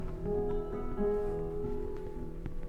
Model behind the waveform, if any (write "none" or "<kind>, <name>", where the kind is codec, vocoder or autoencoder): vocoder, BigVGAN v2